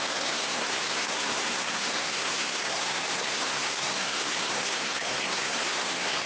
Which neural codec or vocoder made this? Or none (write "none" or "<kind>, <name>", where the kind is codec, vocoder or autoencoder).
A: codec, SNAC